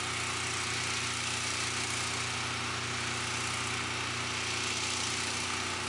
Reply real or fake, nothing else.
real